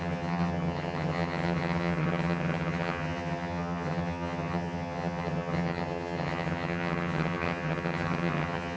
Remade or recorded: remade